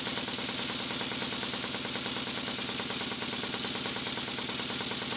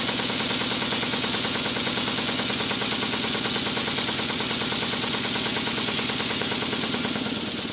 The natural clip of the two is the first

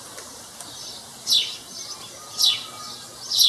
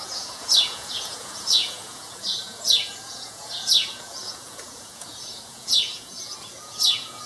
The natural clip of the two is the first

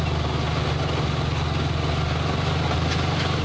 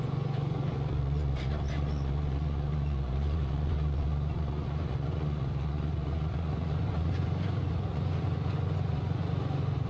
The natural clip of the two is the first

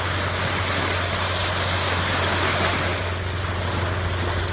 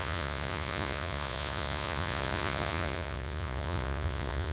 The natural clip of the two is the first